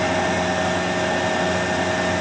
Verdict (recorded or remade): recorded